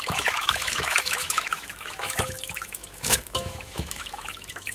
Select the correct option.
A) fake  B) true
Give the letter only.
A